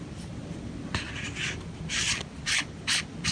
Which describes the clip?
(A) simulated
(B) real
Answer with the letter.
A